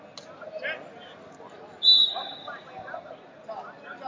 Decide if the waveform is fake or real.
real